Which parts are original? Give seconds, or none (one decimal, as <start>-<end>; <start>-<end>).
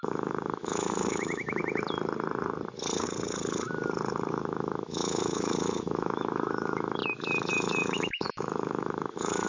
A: 1.6-4.3